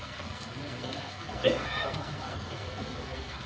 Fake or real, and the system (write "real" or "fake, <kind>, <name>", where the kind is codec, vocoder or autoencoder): fake, codec, SNAC